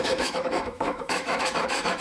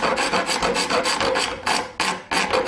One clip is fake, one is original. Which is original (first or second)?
second